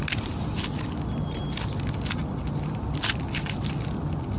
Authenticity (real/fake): real